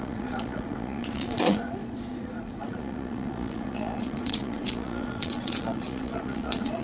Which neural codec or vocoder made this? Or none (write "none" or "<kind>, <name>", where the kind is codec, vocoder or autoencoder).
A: vocoder, Vocos